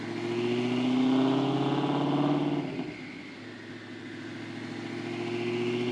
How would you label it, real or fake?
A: real